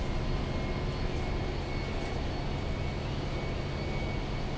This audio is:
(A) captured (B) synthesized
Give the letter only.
A